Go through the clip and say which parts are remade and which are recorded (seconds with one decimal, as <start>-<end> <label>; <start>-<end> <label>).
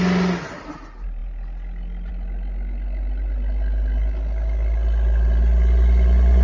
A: 0.0-6.4 recorded